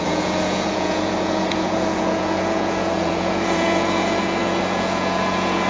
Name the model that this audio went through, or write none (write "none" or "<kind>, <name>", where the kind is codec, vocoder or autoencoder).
vocoder, Vocos